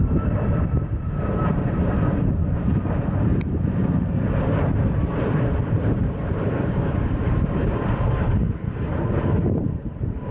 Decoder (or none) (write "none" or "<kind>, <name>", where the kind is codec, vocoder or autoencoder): vocoder, BigVGAN v2